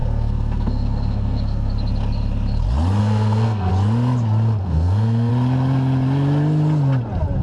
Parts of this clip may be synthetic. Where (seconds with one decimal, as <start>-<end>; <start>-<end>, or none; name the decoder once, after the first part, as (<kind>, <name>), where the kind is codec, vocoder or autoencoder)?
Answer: 0.0-1.7 (codec, SNAC); 3.0-3.7; 4.6-5.3